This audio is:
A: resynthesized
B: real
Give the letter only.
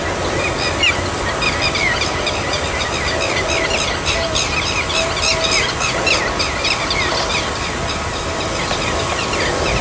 B